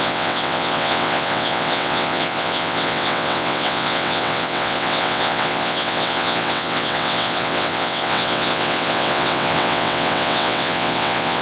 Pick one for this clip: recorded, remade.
remade